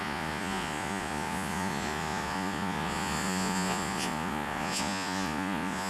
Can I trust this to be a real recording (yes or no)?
no